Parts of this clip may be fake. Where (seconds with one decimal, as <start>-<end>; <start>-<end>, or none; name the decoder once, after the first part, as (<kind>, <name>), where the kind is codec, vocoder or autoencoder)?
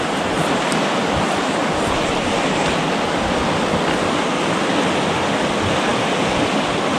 none